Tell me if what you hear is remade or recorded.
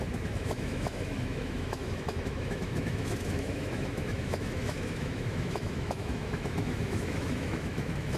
remade